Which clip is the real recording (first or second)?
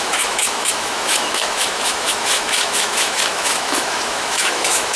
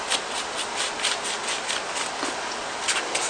second